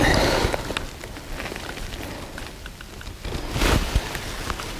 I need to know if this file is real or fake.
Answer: real